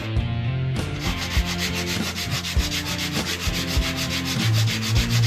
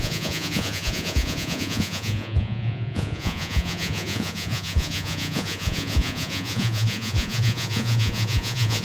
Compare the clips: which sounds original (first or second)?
first